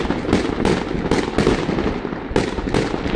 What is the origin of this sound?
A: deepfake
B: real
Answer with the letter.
B